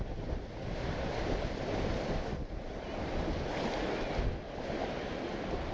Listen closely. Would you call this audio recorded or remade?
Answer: recorded